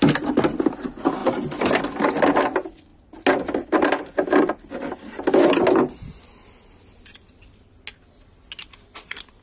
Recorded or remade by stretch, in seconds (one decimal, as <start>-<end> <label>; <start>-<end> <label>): 0.0-9.4 recorded